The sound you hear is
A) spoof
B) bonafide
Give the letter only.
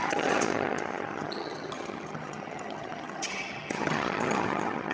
A